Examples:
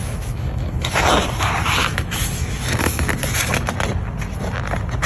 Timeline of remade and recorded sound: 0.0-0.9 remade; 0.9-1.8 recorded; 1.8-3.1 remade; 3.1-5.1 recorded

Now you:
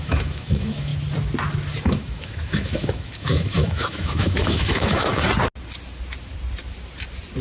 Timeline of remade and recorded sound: 0.0-0.9 remade; 0.9-1.8 recorded; 1.8-5.1 remade; 5.1-7.4 recorded

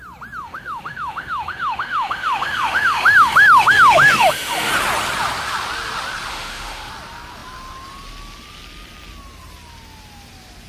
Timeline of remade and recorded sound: 0.0-0.4 recorded; 0.4-4.7 remade; 4.7-6.3 recorded; 6.3-6.9 remade; 6.9-10.7 recorded

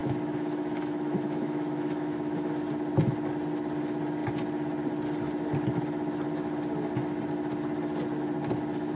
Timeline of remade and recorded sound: 0.0-2.5 remade; 2.5-9.0 recorded

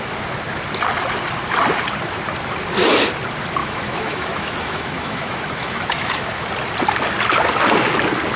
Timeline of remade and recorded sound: 0.0-3.6 recorded; 3.6-6.5 remade; 6.5-8.4 recorded

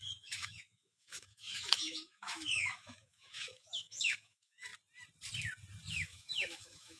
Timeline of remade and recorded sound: 0.0-4.7 remade; 4.7-5.9 recorded; 5.9-7.0 remade

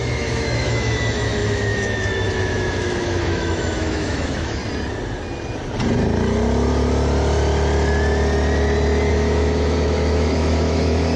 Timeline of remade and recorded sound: 0.0-4.6 remade; 4.6-9.1 recorded; 9.1-11.2 remade